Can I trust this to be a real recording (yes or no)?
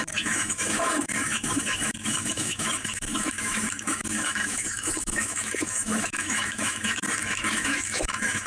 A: no